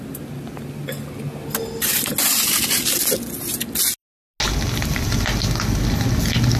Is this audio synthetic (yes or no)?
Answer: no